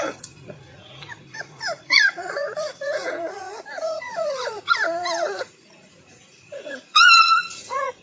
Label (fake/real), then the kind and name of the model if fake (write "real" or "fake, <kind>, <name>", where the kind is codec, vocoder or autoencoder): fake, vocoder, Vocos